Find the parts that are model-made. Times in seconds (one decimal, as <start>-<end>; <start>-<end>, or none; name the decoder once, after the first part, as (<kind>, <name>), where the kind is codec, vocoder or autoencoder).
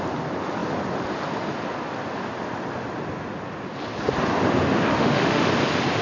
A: 4.9-5.5 (autoencoder, DAC-VAE)